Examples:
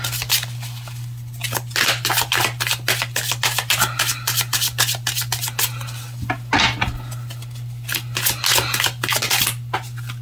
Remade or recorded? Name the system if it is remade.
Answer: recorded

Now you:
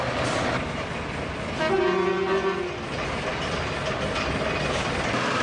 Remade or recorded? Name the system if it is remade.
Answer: recorded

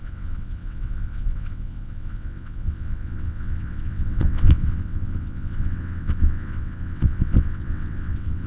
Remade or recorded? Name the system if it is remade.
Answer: remade, vocoder, WaveNeXt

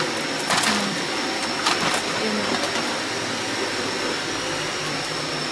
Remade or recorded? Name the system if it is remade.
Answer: recorded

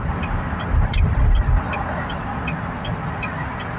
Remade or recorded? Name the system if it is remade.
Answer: recorded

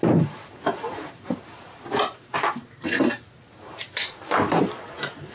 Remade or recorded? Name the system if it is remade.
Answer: remade, vocoder, BigVGAN v2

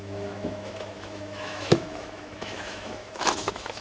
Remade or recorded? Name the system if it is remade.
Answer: remade, autoencoder, DAC-VAE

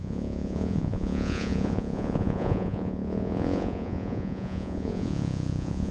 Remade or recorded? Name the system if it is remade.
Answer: remade, vocoder, Vocos